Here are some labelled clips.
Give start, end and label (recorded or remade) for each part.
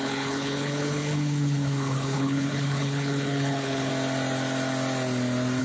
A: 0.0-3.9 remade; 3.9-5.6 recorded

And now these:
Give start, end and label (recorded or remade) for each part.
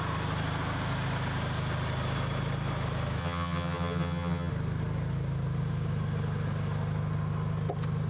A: 0.0-3.2 recorded; 3.2-4.5 remade; 4.5-8.1 recorded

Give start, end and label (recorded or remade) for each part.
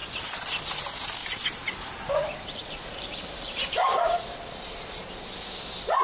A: 0.0-0.6 remade; 0.6-1.2 recorded; 1.2-4.2 remade; 4.2-6.0 recorded